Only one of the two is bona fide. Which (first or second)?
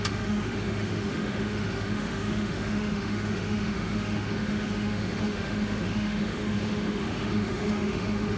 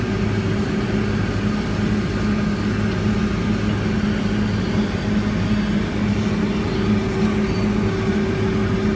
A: second